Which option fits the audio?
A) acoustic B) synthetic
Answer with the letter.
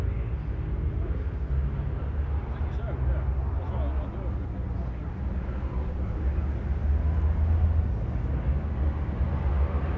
A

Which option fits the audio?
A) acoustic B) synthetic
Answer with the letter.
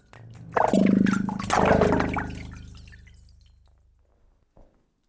A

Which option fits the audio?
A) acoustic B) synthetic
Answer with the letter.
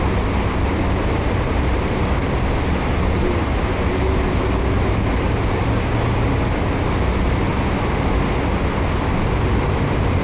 A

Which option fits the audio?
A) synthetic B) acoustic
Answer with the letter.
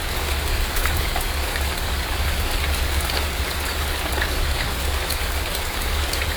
A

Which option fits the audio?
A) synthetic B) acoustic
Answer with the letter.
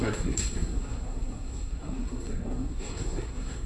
A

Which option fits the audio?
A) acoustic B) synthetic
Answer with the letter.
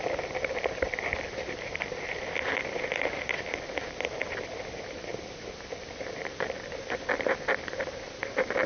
A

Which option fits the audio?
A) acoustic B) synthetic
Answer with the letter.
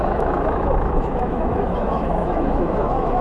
B